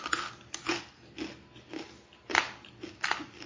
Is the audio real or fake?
real